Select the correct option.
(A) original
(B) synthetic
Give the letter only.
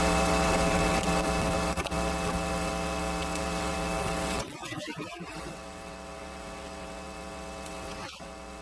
B